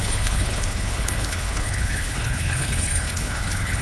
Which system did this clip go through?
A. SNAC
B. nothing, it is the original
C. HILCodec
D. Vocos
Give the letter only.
C